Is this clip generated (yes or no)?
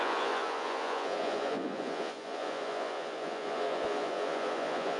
yes